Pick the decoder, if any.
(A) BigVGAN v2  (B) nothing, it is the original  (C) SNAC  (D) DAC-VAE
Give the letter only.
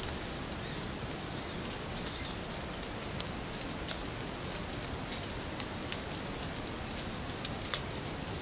B